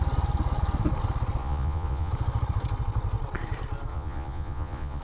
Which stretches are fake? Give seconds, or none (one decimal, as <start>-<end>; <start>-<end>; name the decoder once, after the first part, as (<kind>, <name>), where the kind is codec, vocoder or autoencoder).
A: 1.4-2.1 (vocoder, Vocos); 3.9-5.0